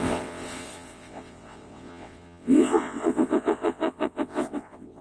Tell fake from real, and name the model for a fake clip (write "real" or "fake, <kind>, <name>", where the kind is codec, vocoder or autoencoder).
fake, vocoder, WaveNeXt